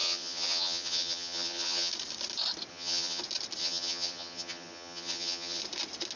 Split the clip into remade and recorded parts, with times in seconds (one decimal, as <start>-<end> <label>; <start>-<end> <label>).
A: 0.0-1.9 remade; 1.9-2.7 recorded; 2.7-3.2 remade; 3.2-3.6 recorded; 3.6-5.6 remade; 5.6-6.2 recorded